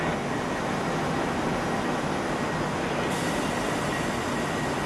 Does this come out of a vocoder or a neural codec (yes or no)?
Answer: no